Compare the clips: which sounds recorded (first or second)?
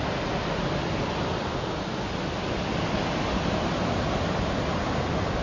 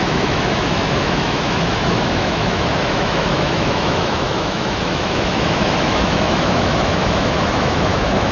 first